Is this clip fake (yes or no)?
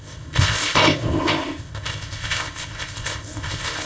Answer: yes